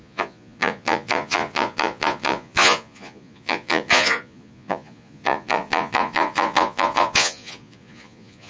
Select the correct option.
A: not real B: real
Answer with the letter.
A